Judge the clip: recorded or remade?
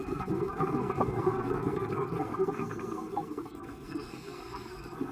remade